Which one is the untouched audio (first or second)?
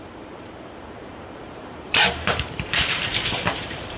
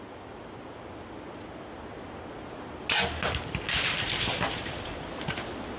second